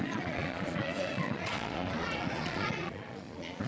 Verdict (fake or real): fake